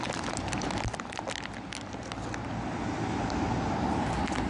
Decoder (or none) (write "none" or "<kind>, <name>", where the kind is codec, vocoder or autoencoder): none